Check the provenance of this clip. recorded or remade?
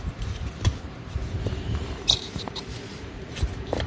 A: remade